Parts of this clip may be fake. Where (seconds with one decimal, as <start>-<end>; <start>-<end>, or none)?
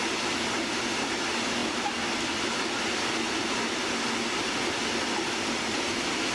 none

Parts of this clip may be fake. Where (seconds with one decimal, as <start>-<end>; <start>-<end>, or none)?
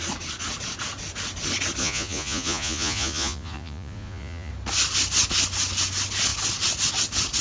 1.8-4.5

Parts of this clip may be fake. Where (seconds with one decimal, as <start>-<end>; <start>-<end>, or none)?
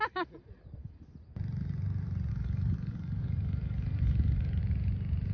2.3-4.6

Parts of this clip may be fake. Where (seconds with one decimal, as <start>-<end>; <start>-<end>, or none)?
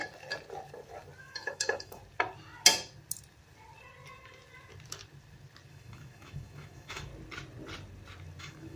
1.2-2.0; 5.7-7.1; 8.4-8.8